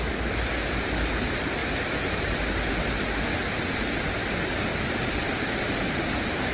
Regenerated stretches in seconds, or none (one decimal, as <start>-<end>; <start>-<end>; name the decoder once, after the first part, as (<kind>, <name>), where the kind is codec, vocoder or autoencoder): none

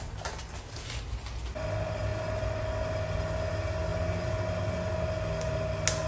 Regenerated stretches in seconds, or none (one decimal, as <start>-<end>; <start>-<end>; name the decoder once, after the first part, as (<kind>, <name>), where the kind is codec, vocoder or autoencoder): none

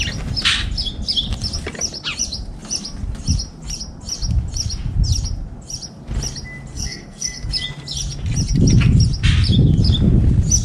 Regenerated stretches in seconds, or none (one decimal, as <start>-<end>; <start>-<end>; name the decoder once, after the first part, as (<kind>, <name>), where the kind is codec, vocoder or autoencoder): 6.7-7.5 (codec, SNAC)

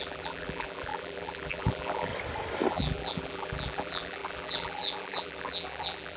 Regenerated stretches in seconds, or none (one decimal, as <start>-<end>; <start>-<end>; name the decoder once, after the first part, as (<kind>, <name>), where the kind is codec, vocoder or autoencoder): 0.0-2.1 (vocoder, BigVGAN v2); 2.7-6.2

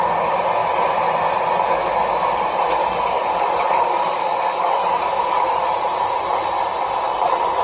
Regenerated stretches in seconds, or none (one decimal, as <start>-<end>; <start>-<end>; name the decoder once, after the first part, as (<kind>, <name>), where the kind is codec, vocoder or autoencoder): 2.8-5.0 (codec, DAC)